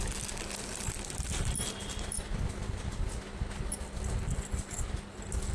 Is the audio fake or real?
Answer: real